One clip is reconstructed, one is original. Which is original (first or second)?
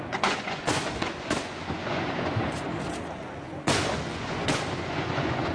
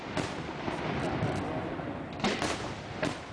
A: second